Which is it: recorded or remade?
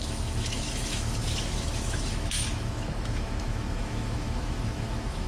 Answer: remade